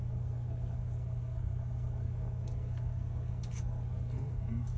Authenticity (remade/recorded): remade